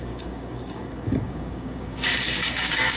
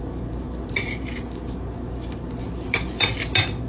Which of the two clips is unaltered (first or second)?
second